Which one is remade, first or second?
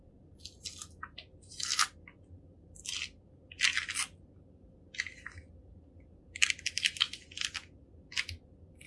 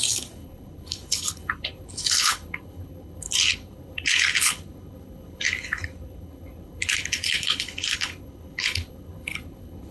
second